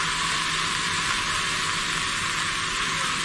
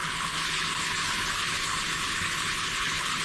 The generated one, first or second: second